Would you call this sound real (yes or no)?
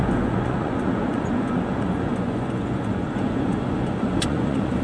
no